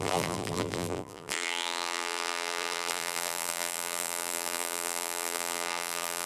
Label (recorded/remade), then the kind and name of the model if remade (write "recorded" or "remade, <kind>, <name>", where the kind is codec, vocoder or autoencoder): remade, vocoder, BigVGAN v2